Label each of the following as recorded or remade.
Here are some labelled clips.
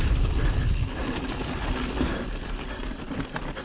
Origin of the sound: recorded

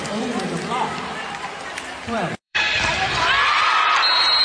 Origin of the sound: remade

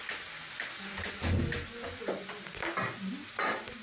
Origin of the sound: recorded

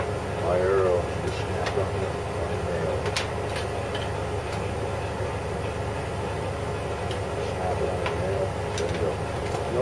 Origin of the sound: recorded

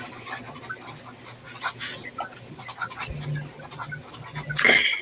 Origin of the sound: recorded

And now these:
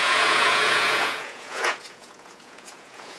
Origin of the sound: remade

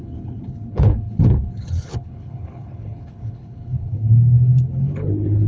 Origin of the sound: remade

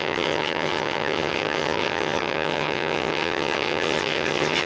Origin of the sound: remade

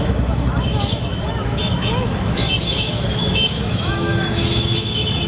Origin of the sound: remade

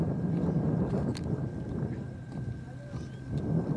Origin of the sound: recorded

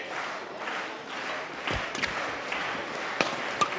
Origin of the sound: recorded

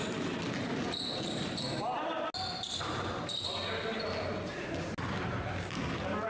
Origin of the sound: recorded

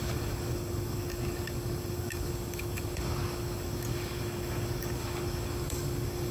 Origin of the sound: remade